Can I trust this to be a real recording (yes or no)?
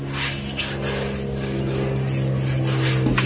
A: yes